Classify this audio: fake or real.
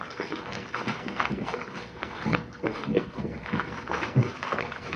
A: fake